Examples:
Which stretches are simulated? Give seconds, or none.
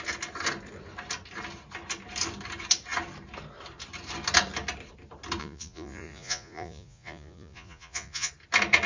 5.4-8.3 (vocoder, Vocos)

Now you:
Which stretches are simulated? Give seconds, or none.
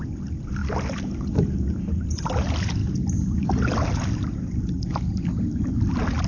none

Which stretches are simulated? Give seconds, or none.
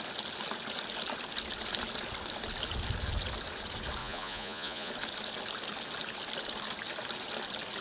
4.0-4.9 (vocoder, Vocos)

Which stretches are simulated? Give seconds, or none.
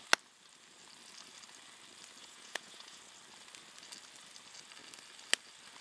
2.2-3.0 (vocoder, Vocos)